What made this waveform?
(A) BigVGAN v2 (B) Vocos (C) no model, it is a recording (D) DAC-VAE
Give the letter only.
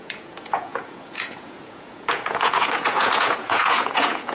B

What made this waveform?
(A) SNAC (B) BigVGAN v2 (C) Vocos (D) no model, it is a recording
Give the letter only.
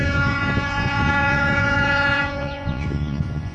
C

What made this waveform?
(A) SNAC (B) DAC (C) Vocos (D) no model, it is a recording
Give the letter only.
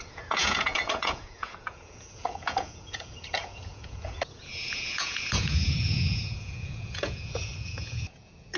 C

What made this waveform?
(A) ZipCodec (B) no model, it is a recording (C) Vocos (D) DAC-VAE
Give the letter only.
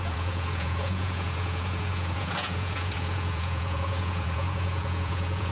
C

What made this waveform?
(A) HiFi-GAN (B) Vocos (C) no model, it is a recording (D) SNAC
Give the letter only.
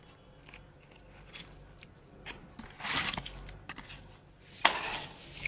C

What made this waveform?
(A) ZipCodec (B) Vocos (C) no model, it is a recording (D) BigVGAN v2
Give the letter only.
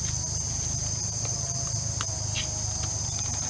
C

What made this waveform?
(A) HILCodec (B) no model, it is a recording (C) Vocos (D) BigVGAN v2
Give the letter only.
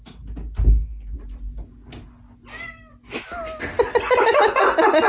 B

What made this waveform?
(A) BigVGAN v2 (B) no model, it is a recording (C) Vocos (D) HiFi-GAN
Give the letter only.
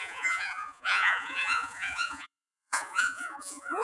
C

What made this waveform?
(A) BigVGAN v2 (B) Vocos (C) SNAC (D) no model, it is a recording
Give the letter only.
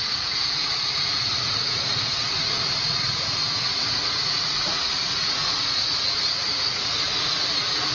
B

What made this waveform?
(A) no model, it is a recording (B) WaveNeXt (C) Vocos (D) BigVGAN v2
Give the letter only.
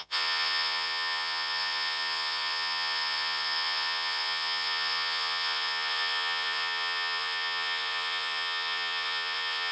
C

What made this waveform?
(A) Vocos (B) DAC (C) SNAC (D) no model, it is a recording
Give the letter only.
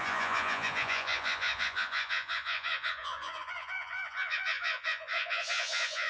A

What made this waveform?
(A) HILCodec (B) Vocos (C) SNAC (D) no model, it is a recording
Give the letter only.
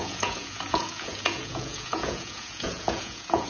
B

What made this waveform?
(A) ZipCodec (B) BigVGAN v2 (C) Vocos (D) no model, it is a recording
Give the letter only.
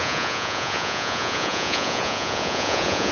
C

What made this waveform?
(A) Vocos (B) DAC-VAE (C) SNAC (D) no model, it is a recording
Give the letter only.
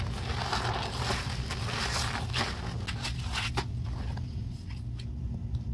D